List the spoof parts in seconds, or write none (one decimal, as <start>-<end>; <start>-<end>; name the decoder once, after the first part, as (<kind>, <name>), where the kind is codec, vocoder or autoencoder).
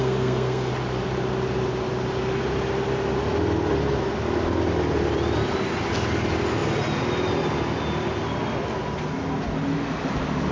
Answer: 0.0-0.7 (codec, SNAC)